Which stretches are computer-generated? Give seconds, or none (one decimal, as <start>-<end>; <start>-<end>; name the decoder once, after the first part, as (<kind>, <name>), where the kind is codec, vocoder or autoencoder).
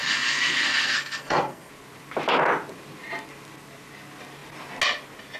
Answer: 0.0-1.7 (codec, SNAC)